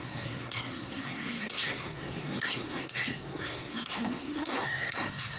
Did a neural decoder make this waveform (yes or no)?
yes